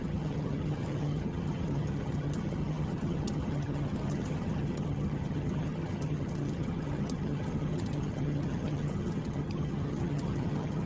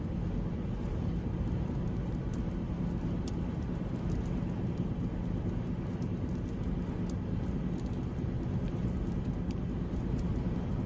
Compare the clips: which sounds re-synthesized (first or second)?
first